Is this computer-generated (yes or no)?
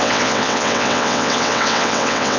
yes